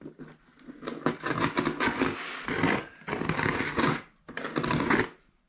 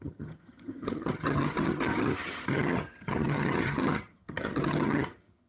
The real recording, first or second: first